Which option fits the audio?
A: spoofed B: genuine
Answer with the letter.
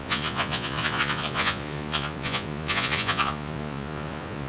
A